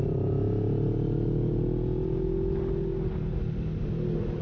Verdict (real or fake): real